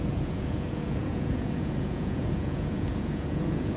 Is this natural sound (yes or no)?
no